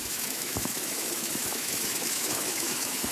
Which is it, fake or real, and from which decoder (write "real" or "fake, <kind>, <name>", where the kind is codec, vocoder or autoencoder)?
fake, autoencoder, DAC-VAE